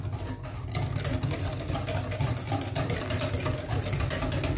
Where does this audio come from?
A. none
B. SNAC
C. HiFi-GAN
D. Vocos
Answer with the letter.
A